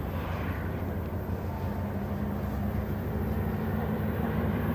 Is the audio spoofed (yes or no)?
no